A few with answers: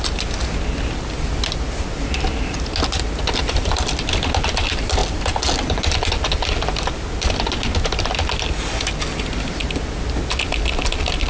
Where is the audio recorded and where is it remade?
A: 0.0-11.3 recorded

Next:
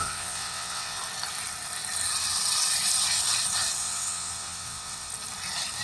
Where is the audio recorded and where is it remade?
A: 0.0-1.0 remade; 1.0-3.8 recorded; 3.8-5.1 remade; 5.1-5.8 recorded

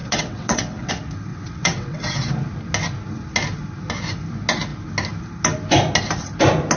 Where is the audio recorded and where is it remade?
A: 0.0-0.9 remade; 0.9-1.3 recorded; 1.3-2.3 remade; 2.3-6.8 recorded